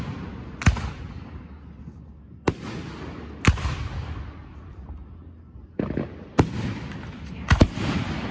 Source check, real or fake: real